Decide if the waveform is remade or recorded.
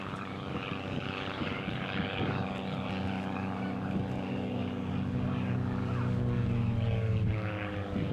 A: remade